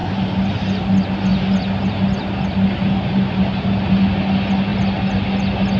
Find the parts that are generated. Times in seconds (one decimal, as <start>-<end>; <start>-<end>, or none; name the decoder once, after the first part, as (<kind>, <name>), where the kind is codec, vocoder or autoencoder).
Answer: none